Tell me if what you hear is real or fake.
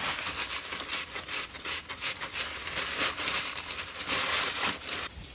real